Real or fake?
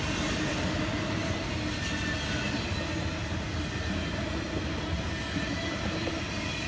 real